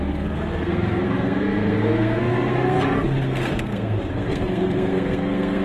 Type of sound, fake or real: fake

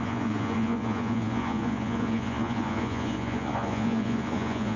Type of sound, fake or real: fake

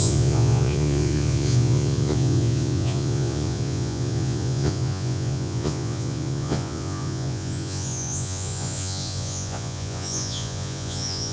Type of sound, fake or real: fake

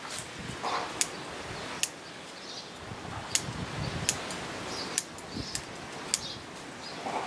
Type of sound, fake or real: real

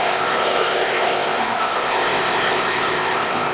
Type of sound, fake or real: fake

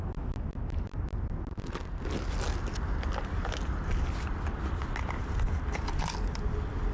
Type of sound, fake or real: real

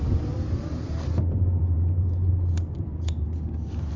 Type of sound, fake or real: fake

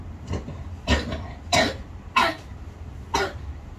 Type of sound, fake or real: real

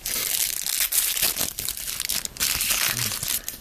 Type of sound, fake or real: real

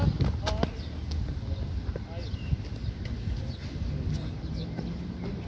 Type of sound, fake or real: real